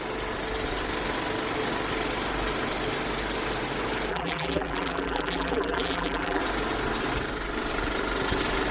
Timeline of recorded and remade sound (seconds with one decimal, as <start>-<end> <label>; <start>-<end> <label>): 0.0-4.1 recorded; 4.1-6.4 remade; 6.4-8.7 recorded